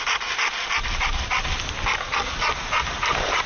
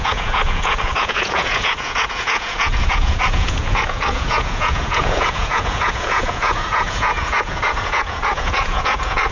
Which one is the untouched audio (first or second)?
first